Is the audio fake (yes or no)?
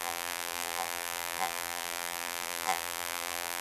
yes